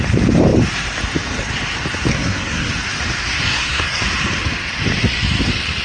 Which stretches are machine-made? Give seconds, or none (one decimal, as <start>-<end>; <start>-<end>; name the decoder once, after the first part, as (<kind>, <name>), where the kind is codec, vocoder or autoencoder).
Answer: 2.1-2.7 (codec, SNAC); 3.5-4.0